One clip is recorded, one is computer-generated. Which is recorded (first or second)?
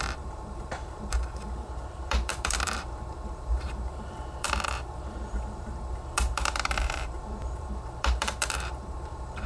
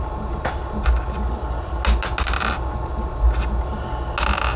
second